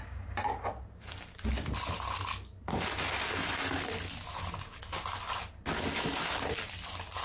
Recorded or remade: recorded